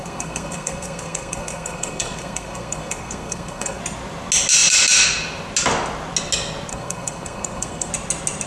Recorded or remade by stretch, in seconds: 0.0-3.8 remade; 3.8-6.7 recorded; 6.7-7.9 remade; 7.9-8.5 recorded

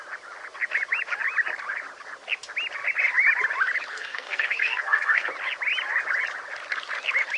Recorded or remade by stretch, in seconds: 0.0-3.9 recorded; 3.9-5.3 remade; 5.3-7.4 recorded

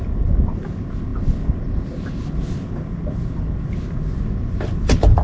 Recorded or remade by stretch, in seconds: 0.0-5.2 recorded